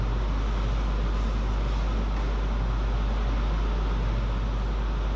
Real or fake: real